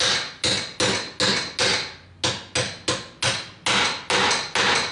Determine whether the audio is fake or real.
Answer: real